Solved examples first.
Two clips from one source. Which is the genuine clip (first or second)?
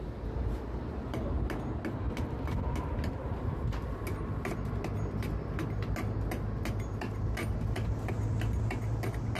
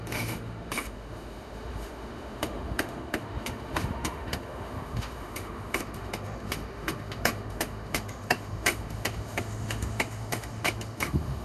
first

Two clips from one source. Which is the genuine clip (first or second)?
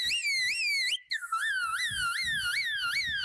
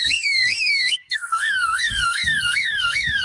first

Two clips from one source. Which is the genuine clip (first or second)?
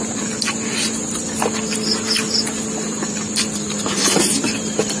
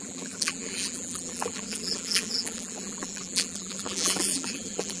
first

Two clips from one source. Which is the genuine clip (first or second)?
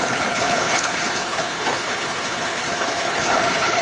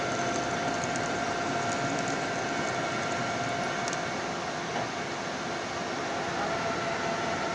second